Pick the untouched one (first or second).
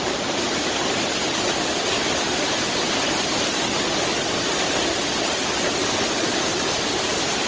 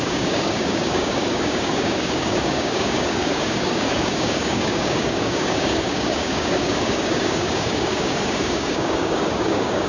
first